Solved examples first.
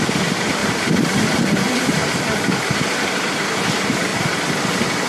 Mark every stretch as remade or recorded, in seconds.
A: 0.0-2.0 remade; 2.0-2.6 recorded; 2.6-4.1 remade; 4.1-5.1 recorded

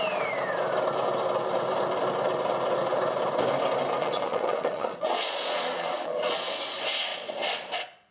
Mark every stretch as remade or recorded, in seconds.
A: 0.0-4.0 recorded; 4.0-6.6 remade; 6.6-7.1 recorded; 7.1-8.1 remade

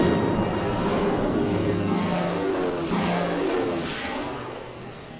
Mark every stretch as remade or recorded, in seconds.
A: 0.0-0.6 recorded; 0.6-2.5 remade; 2.5-3.0 recorded; 3.0-5.2 remade

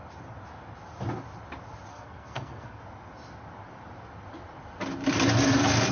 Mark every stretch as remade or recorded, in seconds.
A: 0.0-1.9 recorded; 1.9-2.8 remade; 2.8-5.9 recorded

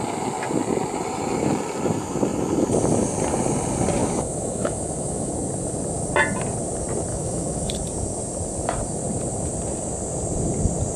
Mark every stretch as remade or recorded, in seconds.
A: 0.0-4.0 recorded; 4.0-5.3 remade; 5.3-7.1 recorded; 7.1-7.7 remade; 7.7-11.0 recorded

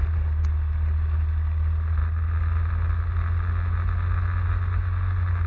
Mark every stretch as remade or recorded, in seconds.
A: 0.0-5.5 recorded

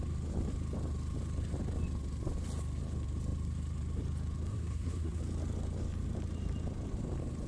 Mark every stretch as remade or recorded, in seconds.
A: 0.0-4.5 recorded; 4.5-5.2 remade; 5.2-7.5 recorded